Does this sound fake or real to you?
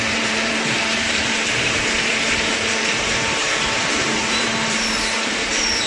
fake